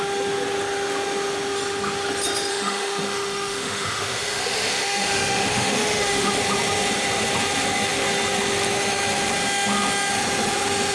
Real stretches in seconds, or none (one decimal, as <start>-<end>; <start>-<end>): 0.0-2.5; 6.4-10.9